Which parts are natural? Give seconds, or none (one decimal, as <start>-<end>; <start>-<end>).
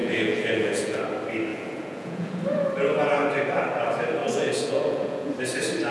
1.0-1.5; 2.4-4.2; 5.3-5.9